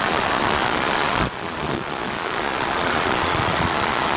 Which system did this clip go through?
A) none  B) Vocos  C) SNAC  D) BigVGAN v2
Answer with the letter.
B